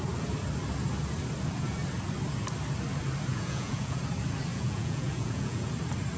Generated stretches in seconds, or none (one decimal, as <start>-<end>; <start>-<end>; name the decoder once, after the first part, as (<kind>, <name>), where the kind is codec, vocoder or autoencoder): 3.3-4.0 (vocoder, Vocos); 4.5-5.7